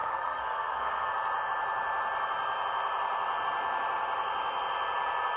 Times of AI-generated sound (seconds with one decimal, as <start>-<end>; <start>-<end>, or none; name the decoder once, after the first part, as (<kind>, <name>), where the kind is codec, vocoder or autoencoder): 0.0-1.1 (codec, SNAC)